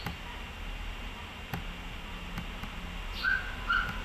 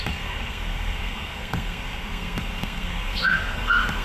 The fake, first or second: second